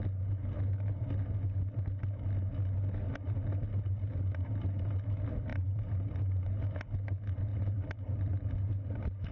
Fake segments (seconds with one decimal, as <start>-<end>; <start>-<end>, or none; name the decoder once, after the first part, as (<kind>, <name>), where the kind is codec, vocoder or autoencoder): 5.5-6.6 (vocoder, BigVGAN v2); 7.5-8.5